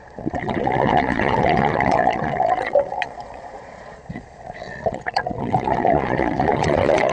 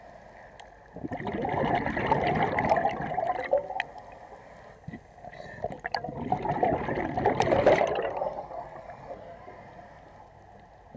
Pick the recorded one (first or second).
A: second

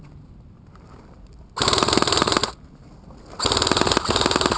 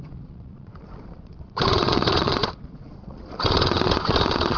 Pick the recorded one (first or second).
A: first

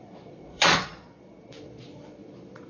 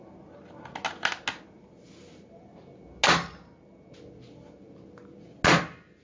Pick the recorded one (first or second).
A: second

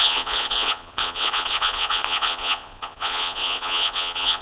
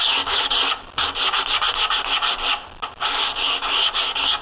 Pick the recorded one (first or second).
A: second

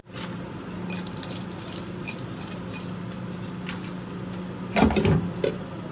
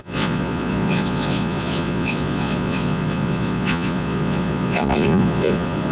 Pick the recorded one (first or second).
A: first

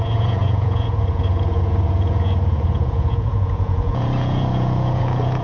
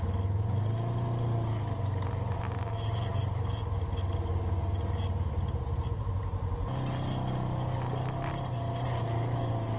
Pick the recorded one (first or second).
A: second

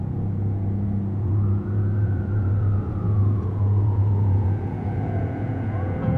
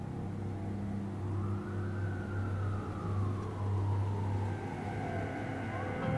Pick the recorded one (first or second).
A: second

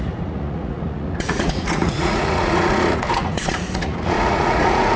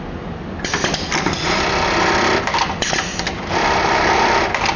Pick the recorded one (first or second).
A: second